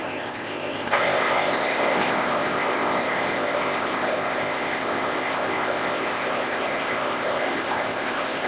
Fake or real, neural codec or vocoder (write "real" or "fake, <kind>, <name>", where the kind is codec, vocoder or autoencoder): fake, codec, ZipCodec